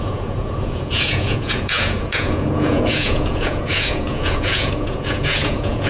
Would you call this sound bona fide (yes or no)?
no